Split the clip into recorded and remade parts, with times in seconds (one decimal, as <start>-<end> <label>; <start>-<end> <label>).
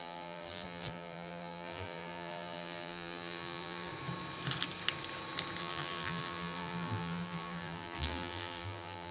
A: 0.0-3.9 remade; 3.9-5.6 recorded; 5.6-9.1 remade